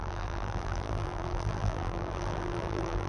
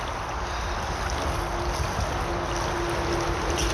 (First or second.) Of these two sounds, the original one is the second